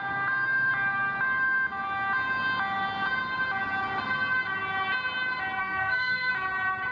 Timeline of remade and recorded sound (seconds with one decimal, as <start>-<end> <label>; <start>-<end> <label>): 0.0-5.6 recorded; 5.6-6.3 remade; 6.3-6.9 recorded